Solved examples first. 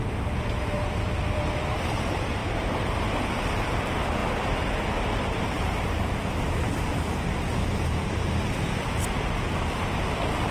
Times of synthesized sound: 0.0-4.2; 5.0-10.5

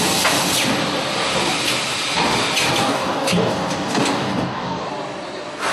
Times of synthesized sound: 2.8-4.9

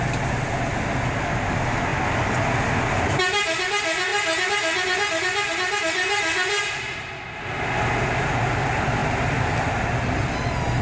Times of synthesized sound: none

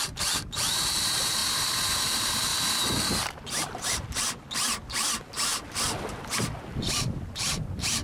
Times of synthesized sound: 0.0-1.4; 2.0-2.5; 3.6-5.5; 6.8-8.0

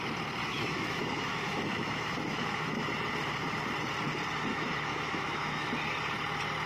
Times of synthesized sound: 0.4-2.9; 4.5-5.7